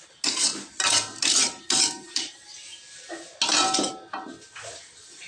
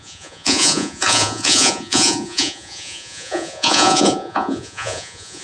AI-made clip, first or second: second